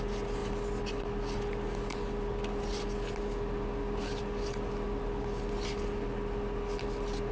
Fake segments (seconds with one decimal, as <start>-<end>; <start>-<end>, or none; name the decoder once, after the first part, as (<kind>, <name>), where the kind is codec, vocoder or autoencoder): none